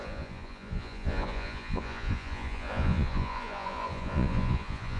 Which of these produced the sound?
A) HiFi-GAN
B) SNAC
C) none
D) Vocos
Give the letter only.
D